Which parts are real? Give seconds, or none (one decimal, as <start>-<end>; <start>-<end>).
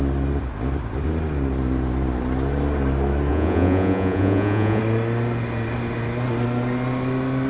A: 0.0-3.3; 4.8-7.5